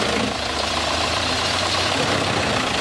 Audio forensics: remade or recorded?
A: remade